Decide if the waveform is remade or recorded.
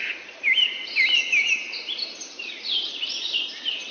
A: remade